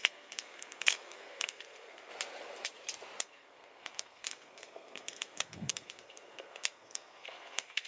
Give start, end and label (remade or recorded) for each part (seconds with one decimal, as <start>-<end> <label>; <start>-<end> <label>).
0.0-2.1 remade; 2.1-3.2 recorded; 3.2-7.9 remade